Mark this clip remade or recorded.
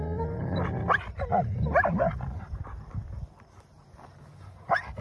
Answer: recorded